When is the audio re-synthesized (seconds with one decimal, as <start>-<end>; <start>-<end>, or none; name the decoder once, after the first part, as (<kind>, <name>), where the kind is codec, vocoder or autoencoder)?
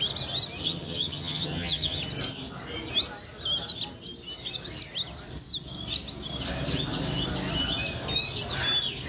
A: 0.6-2.0 (vocoder, HiFi-GAN)